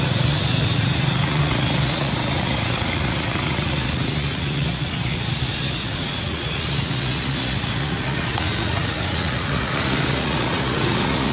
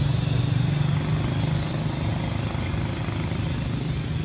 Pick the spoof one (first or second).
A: first